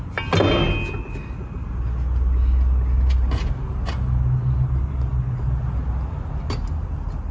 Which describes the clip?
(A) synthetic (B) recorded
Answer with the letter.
B